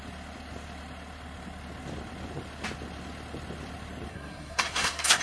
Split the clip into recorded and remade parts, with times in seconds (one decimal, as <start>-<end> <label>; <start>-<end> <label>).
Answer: 0.0-4.1 recorded; 4.1-5.2 remade